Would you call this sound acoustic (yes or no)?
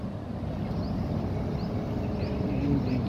yes